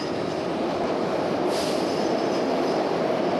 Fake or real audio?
real